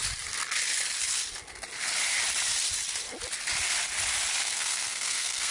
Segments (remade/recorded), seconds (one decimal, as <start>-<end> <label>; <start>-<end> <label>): 0.0-4.4 recorded; 4.4-5.5 remade